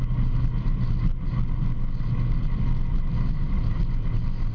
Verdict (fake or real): real